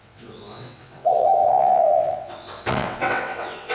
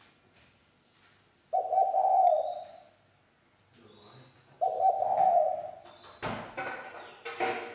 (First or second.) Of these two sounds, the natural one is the second